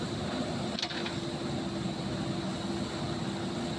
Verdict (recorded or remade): recorded